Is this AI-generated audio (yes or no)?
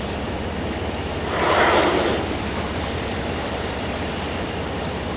yes